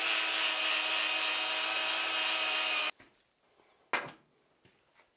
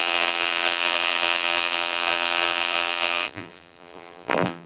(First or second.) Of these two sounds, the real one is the first